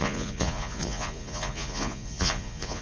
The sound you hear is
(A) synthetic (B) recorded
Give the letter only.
A